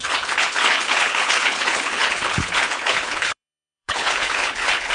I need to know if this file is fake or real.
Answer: fake